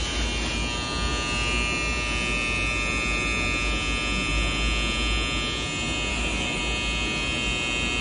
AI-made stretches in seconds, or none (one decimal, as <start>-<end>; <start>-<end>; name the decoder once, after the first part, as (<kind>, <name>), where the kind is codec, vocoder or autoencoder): 6.1-6.6 (autoencoder, DAC-VAE)